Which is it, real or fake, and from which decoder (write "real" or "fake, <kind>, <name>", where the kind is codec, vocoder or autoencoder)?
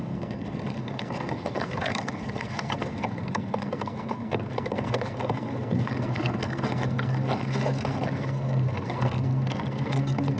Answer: fake, codec, SNAC